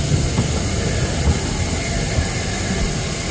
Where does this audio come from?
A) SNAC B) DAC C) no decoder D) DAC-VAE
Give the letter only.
C